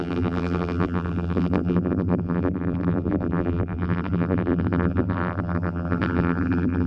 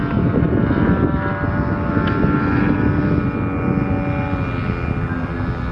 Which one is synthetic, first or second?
first